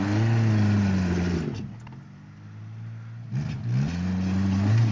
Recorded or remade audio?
recorded